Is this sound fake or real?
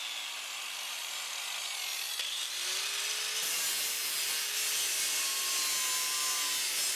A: real